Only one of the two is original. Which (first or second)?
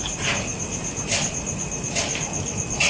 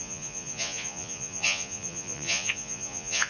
first